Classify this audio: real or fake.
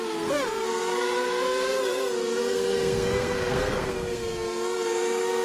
fake